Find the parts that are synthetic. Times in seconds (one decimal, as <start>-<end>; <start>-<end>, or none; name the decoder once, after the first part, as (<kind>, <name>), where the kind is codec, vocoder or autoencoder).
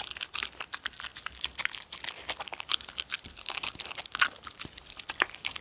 none